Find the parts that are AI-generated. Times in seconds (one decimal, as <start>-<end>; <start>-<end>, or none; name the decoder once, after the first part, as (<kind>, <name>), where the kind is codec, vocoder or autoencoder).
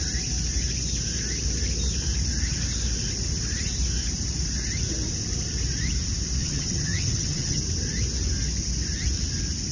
6.4-7.6 (vocoder, HiFi-GAN)